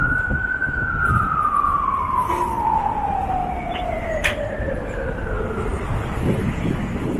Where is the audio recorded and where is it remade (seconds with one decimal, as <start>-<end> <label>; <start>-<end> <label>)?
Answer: 0.0-1.7 recorded; 1.7-2.3 remade; 2.3-3.4 recorded; 3.4-4.1 remade; 4.1-7.2 recorded